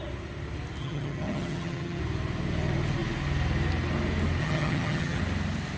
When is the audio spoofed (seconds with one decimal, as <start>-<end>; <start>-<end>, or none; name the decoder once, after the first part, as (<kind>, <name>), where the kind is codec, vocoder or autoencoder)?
0.8-2.0 (vocoder, HiFi-GAN); 4.4-5.2